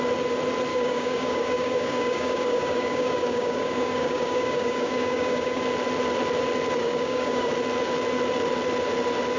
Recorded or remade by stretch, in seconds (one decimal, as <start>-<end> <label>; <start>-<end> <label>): 0.0-0.7 recorded; 0.7-5.6 remade; 5.6-6.8 recorded; 6.8-7.5 remade; 7.5-9.4 recorded